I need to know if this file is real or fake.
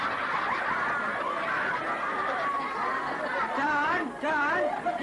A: real